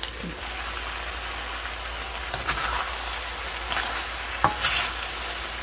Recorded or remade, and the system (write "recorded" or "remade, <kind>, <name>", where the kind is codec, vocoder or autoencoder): recorded